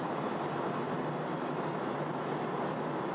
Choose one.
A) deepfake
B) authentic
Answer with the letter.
B